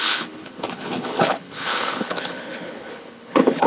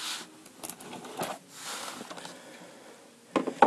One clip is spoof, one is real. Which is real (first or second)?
second